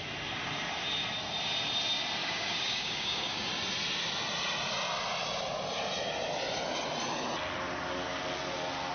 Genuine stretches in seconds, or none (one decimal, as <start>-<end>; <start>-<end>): 0.0-2.2; 3.5-8.9